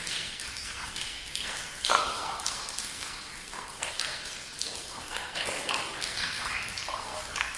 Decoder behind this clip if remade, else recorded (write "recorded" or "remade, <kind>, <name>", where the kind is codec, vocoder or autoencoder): remade, codec, SNAC